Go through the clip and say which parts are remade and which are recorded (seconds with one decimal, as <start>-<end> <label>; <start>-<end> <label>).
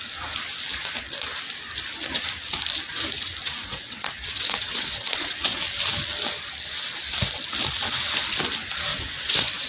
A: 0.0-3.6 recorded; 3.6-5.6 remade; 5.6-8.9 recorded; 8.9-9.7 remade